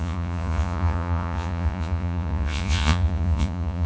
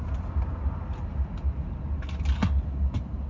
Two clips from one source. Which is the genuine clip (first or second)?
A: second